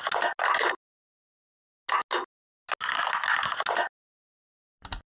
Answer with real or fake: real